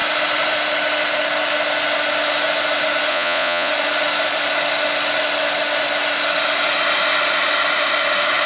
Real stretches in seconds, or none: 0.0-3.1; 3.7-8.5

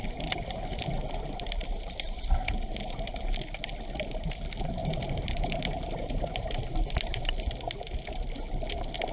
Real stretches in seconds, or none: 3.1-4.8; 7.2-9.1

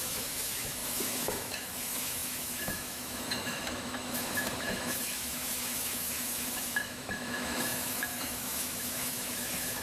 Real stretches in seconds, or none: none

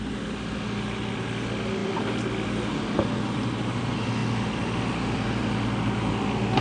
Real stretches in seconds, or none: 0.0-6.6

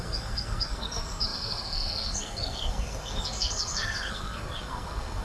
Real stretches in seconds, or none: none

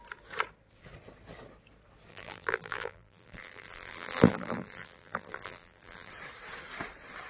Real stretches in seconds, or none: 0.0-2.1; 6.1-7.3

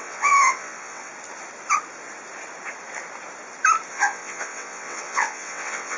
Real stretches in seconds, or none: 1.1-3.9

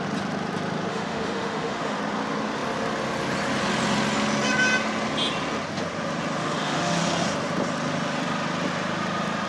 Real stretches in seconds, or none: 0.0-0.9; 2.0-6.4; 7.0-9.5